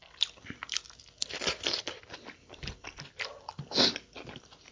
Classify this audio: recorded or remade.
recorded